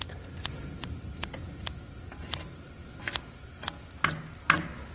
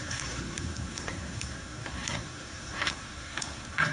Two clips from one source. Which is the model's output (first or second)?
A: second